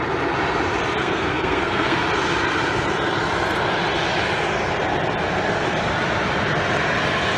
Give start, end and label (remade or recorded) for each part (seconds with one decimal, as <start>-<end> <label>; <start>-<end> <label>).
0.0-1.0 recorded; 1.0-2.0 remade; 2.0-7.4 recorded